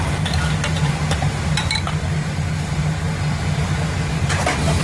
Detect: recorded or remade recorded